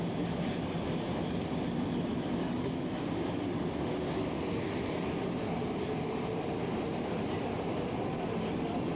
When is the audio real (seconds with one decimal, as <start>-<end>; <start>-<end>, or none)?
0.0-2.1; 3.0-9.0